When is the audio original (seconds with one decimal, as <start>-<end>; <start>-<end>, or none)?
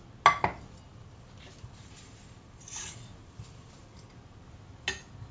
0.0-0.9; 4.1-5.3